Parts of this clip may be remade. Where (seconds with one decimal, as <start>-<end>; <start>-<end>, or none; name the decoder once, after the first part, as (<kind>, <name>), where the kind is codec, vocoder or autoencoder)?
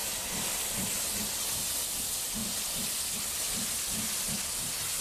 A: 2.4-4.4 (vocoder, BigVGAN v2)